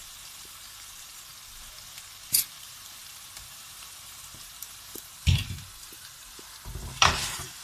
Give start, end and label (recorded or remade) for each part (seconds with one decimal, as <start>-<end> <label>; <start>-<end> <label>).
0.0-1.3 remade; 1.3-2.6 recorded; 2.6-7.6 remade